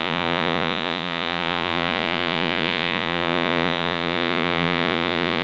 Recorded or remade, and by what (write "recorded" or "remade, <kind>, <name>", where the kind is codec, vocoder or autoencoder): remade, vocoder, Vocos